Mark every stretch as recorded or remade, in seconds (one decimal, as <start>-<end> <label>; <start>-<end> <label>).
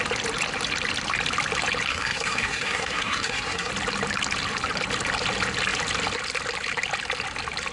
0.0-1.9 recorded; 1.9-3.7 remade; 3.7-7.7 recorded